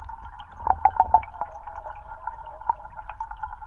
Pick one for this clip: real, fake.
real